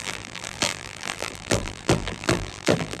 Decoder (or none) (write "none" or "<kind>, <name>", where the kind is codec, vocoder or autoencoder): vocoder, BigVGAN v2